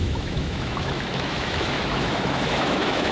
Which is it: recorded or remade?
remade